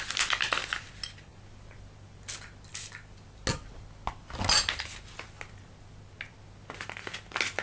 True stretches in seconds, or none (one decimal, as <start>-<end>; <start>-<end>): 0.0-7.6